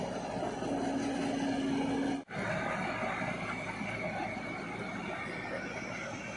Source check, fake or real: real